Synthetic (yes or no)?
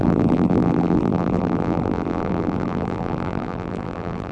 yes